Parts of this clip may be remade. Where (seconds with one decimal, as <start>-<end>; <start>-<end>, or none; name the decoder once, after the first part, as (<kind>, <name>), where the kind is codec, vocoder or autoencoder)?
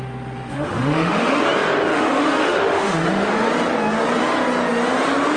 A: 0.5-1.4 (autoencoder, DAC-VAE); 1.9-3.3